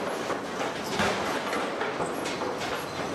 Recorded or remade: recorded